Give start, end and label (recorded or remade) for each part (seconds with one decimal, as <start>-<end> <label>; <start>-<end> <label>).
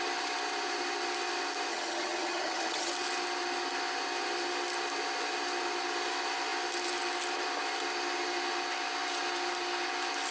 0.0-1.7 recorded; 1.7-2.9 remade; 2.9-10.3 recorded